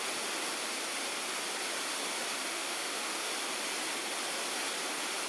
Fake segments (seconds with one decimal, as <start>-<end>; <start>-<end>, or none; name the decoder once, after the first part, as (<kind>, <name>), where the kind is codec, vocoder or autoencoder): 2.5-3.3 (autoencoder, DAC-VAE)